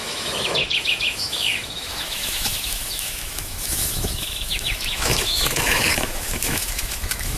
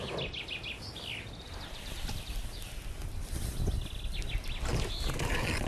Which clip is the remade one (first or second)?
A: first